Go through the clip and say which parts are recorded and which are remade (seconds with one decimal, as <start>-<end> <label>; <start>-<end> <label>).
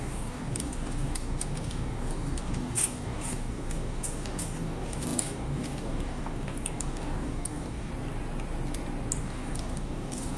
0.0-7.9 remade; 7.9-9.2 recorded; 9.2-10.4 remade